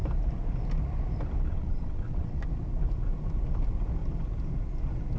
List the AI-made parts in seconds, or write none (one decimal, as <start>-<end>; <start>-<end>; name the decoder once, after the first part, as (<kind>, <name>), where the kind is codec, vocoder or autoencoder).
1.5-2.4 (vocoder, WaveNeXt)